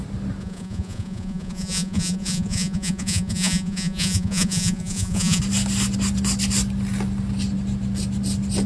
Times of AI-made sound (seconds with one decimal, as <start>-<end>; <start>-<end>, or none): 0.4-5.4